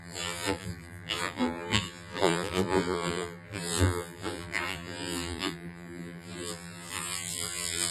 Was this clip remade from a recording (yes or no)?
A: yes